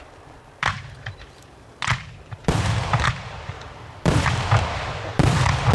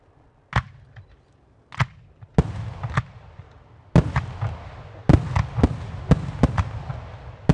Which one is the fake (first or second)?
first